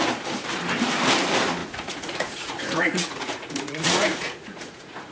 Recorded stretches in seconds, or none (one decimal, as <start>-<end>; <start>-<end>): 0.0-1.6